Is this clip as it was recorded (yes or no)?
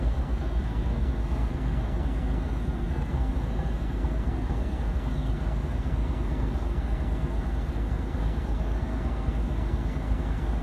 no